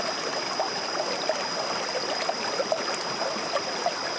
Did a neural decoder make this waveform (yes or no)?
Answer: no